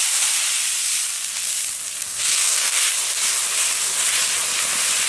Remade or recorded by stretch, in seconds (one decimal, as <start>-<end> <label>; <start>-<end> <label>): 0.0-2.0 recorded; 2.0-2.8 remade; 2.8-5.1 recorded